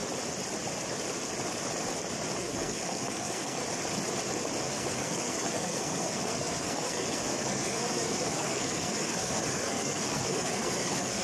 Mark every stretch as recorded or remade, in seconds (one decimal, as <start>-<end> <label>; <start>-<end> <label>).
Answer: 0.0-2.4 recorded; 2.4-3.6 remade; 3.6-4.6 recorded; 4.6-11.2 remade